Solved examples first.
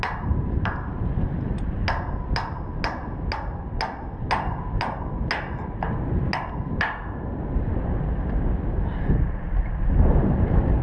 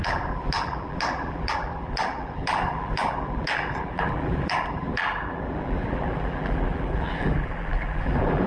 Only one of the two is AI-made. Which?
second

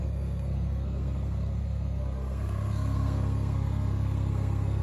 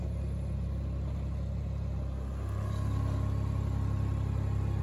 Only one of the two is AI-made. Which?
first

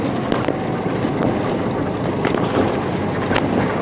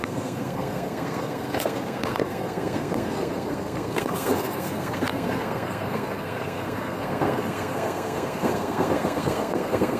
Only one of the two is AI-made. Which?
second